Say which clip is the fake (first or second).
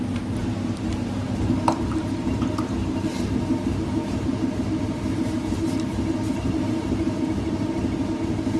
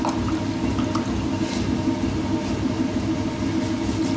first